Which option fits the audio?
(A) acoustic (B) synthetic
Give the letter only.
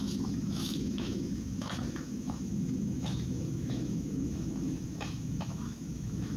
B